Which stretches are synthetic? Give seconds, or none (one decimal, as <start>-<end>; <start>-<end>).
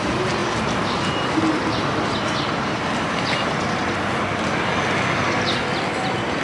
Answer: none